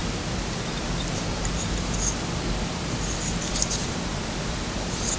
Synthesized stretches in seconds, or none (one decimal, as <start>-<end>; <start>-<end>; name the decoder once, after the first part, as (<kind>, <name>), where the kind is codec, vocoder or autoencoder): none